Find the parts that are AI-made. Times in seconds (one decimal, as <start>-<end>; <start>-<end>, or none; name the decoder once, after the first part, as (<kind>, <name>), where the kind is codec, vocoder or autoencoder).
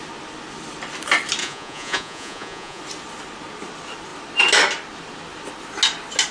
1.4-2.8 (vocoder, Vocos)